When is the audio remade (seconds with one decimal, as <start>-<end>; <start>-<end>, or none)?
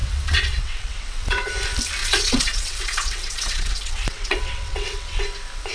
0.0-1.5; 2.0-5.2